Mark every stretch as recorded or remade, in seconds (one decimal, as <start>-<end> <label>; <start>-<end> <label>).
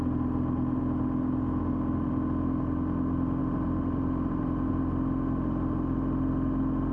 0.0-3.4 recorded; 3.4-4.7 remade; 4.7-6.9 recorded